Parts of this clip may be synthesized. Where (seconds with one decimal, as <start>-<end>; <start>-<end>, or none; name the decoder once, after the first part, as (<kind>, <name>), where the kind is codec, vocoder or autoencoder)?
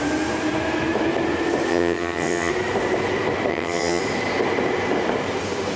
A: 1.7-2.5 (vocoder, HiFi-GAN); 3.5-4.0